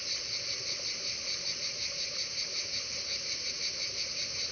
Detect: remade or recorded recorded